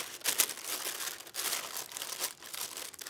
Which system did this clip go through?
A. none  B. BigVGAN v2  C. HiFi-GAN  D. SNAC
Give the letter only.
A